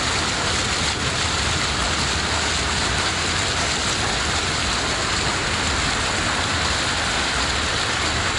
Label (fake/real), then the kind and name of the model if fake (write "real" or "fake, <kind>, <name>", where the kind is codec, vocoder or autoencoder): real